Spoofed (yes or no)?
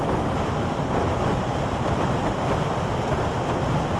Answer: no